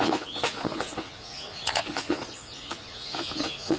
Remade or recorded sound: remade